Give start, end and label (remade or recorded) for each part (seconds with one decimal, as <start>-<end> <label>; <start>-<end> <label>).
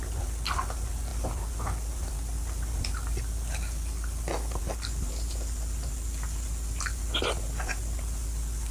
0.0-8.7 recorded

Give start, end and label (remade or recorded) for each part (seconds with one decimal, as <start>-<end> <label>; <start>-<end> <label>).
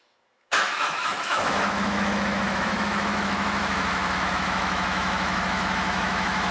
0.0-6.5 remade